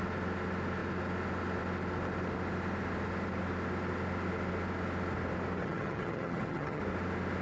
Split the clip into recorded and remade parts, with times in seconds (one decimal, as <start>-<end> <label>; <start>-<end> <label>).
0.0-5.6 recorded; 5.6-6.8 remade; 6.8-7.4 recorded